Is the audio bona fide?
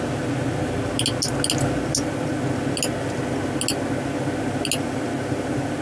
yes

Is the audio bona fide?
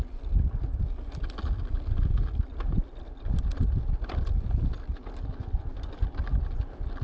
yes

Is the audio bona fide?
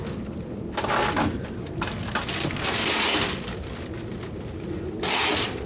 yes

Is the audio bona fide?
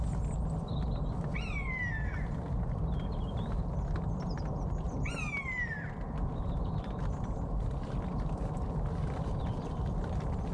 yes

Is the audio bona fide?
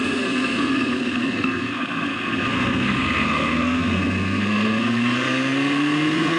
no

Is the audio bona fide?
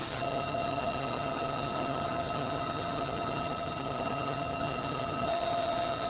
no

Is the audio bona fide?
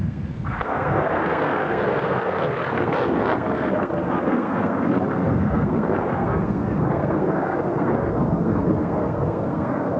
no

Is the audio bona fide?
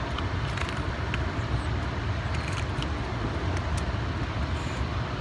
yes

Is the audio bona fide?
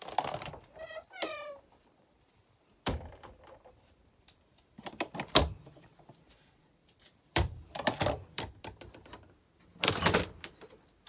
no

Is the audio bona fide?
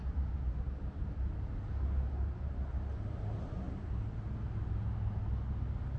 yes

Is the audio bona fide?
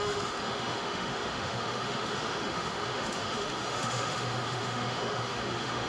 no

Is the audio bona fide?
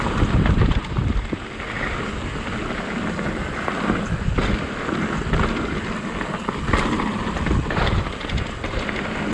yes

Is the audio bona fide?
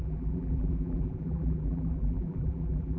no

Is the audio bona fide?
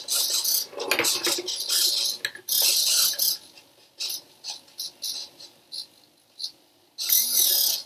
yes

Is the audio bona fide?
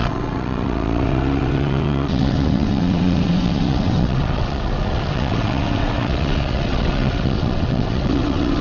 no